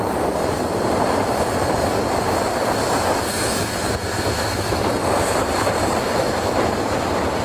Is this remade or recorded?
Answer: recorded